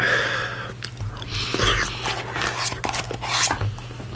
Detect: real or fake real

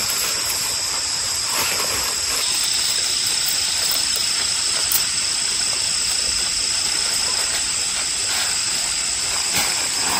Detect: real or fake real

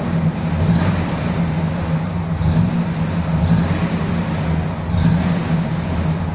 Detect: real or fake real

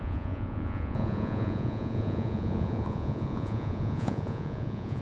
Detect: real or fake fake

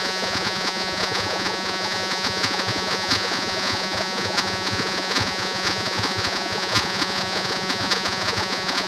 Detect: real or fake fake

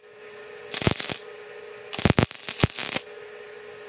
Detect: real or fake real